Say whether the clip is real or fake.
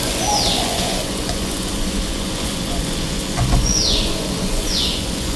fake